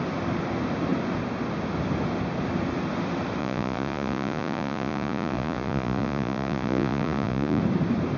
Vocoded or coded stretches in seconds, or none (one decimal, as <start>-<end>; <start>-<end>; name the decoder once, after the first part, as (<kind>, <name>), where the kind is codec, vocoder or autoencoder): 3.4-7.6 (vocoder, Vocos)